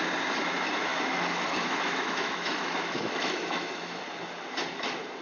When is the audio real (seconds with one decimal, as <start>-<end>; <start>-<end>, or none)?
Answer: 0.0-0.9; 4.0-5.2